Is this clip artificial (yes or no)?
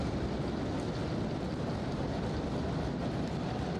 no